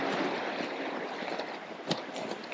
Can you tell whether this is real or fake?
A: real